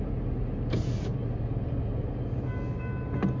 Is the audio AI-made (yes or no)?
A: no